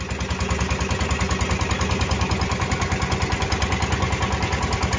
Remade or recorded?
recorded